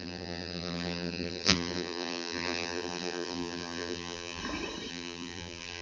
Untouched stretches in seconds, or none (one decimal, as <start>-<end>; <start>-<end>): 4.4-4.9